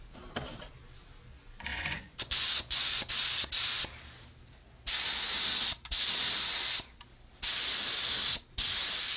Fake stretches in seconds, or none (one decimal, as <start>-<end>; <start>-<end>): 1.7-3.1